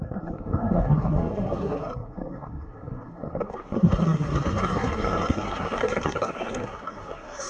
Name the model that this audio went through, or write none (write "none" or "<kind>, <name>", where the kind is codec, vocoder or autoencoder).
codec, SNAC